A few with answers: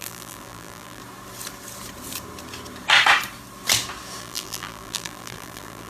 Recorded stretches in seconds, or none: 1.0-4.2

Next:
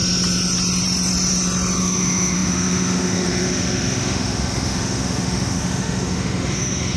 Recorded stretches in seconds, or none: 0.0-1.8